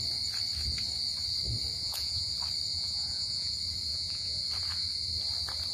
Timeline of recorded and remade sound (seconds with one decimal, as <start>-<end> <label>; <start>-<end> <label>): 0.0-1.8 recorded; 1.8-2.3 remade; 2.3-2.7 recorded; 2.7-3.5 remade; 3.5-3.9 recorded; 3.9-4.4 remade; 4.4-5.7 recorded